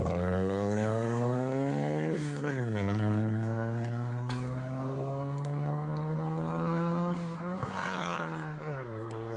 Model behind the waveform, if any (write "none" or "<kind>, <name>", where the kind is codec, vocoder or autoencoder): codec, SNAC